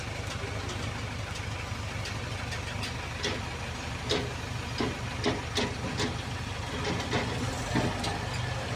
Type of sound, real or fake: real